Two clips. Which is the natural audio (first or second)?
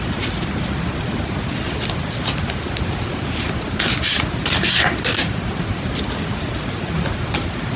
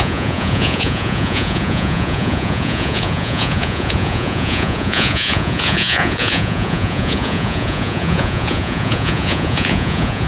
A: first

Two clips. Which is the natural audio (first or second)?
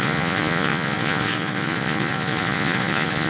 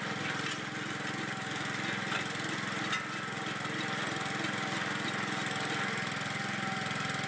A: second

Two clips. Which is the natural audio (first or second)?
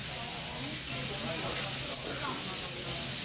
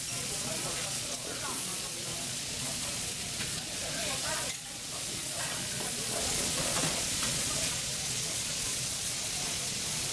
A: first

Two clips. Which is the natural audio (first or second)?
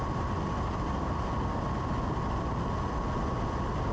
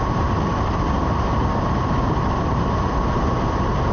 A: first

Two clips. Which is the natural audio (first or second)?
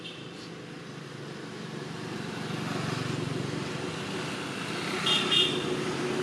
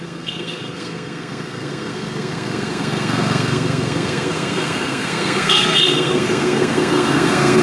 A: first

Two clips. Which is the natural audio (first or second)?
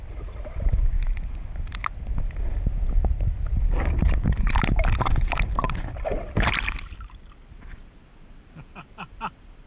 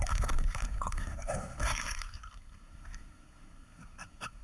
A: first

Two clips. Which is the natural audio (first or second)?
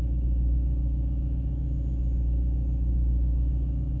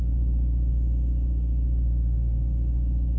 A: second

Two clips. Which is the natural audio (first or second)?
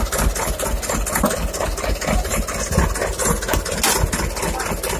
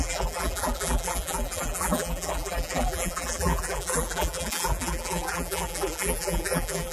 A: first